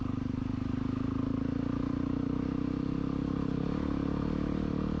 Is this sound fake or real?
real